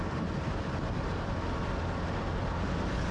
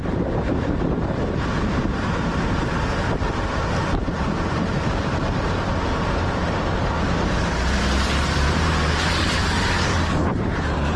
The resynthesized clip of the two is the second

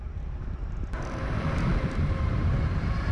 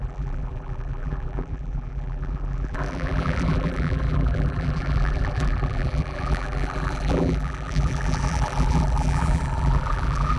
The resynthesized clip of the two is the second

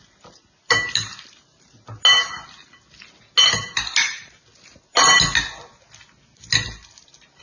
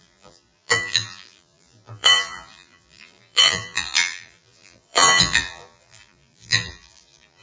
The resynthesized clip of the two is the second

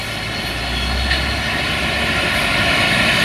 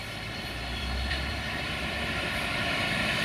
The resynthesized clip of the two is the second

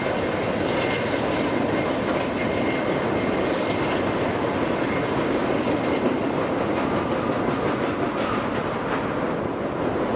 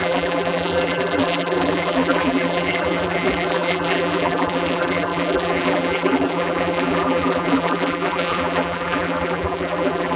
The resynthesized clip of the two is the second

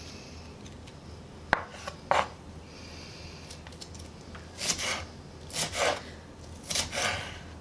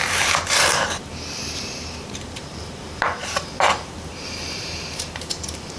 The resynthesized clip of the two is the second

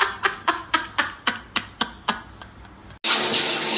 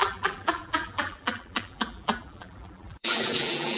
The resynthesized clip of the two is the second